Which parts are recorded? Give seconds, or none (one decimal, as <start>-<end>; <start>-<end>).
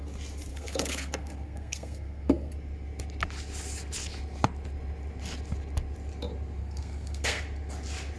0.0-0.5; 2.5-6.6; 7.4-8.2